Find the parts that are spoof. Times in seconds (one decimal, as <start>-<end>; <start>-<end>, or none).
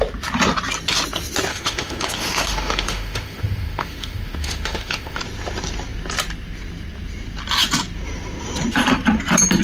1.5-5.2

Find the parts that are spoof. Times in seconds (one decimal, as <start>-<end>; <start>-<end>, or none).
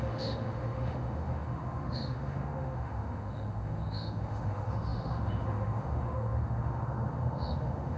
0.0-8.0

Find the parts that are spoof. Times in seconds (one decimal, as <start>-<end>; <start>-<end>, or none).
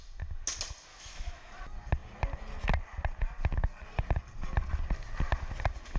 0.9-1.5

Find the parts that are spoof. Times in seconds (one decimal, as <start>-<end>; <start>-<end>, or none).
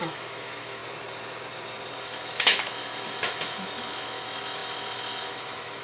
0.0-0.8; 2.0-5.8